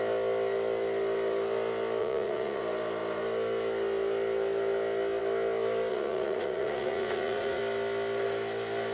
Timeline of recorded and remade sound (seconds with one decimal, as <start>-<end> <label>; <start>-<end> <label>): 0.0-2.0 recorded; 2.0-2.6 remade; 2.6-5.9 recorded; 5.9-7.6 remade; 7.6-8.9 recorded